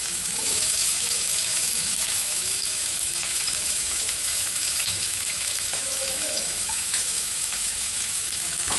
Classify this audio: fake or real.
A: fake